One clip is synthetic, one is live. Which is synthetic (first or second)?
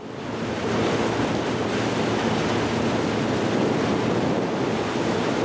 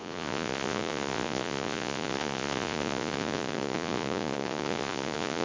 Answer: second